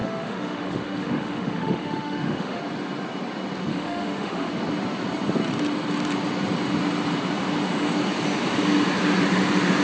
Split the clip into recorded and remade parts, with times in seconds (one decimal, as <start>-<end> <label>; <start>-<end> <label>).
0.0-2.6 remade; 2.6-3.7 recorded; 3.7-4.5 remade; 4.5-9.8 recorded